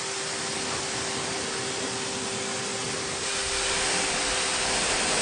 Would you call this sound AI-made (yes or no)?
no